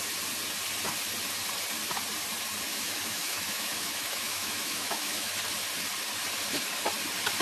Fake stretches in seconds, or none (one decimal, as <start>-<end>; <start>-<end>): 2.7-5.3